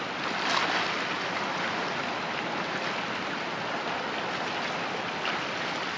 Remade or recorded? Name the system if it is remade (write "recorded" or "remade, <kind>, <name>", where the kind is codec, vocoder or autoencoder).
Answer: recorded